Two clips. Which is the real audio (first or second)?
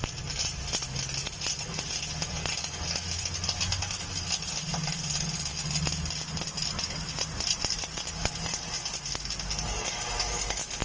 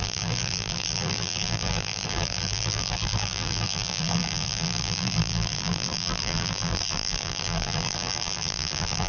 first